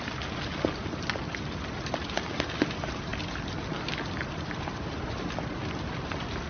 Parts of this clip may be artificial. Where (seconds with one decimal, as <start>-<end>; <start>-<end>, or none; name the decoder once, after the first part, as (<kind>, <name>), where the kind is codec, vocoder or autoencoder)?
none